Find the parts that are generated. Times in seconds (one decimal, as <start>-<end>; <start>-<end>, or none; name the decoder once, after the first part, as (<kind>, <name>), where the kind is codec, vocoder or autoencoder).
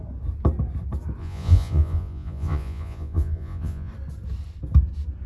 1.2-3.9 (vocoder, Vocos)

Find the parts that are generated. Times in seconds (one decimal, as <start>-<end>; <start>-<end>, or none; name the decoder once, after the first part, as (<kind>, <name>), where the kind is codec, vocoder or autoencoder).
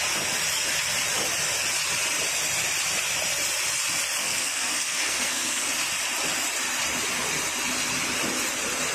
4.2-5.7 (codec, SNAC)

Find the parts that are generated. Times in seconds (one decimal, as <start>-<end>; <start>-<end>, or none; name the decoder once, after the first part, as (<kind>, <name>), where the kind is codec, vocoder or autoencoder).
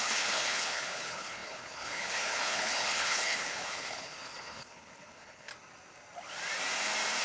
0.0-5.5 (codec, HILCodec)